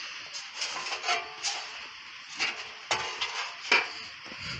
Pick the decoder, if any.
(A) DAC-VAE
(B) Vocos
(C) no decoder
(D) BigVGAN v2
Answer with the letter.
C